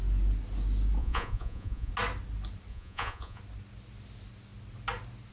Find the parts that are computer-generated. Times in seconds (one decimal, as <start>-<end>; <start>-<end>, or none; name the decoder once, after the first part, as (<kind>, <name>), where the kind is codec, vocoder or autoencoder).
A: 1.0-1.9 (vocoder, Vocos); 2.7-3.4

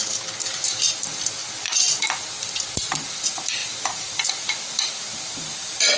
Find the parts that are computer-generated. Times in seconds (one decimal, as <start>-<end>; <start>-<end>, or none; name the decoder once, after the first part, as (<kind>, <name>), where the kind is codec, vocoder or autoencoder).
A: 0.0-0.8 (vocoder, BigVGAN v2); 3.6-6.0

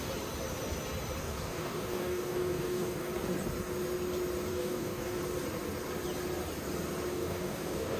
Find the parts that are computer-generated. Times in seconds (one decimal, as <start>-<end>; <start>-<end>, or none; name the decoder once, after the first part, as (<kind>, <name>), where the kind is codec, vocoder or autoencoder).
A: 1.2-3.1 (codec, DAC); 4.5-5.2; 7.1-8.0

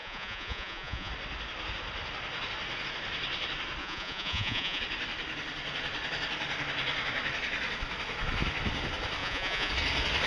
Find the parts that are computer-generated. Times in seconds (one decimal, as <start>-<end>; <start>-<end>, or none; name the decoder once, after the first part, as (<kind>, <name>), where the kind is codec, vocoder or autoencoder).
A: 0.0-1.1 (vocoder, Vocos); 3.8-4.8; 9.2-9.7

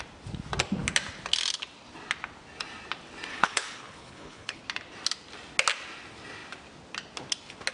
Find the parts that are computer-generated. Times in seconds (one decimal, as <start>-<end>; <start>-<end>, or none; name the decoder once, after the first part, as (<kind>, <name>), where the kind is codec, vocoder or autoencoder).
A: 3.3-4.6 (codec, HILCodec)

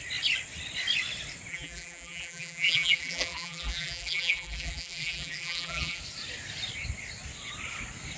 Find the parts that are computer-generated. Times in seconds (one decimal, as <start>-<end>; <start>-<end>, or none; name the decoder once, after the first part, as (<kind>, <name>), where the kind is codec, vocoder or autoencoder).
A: 1.5-6.0 (vocoder, BigVGAN v2)

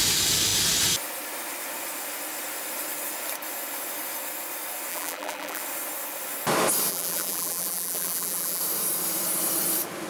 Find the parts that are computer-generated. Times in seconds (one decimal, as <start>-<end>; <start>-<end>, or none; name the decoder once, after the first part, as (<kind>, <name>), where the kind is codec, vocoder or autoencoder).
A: 4.9-5.6 (vocoder, BigVGAN v2); 6.9-8.6

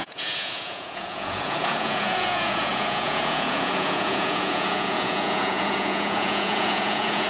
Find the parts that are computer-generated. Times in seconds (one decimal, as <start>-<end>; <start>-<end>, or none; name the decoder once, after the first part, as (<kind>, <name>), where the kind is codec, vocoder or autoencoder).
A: 0.0-7.3 (vocoder, Vocos)